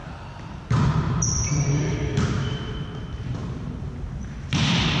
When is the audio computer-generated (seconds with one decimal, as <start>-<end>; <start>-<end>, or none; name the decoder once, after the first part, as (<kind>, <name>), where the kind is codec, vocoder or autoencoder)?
0.0-3.4 (vocoder, BigVGAN v2)